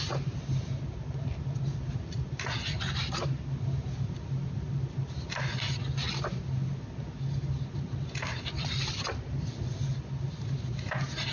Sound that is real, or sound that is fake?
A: real